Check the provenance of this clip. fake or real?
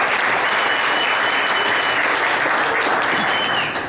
real